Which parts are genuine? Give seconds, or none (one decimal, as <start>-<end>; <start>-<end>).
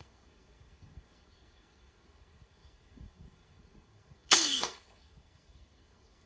none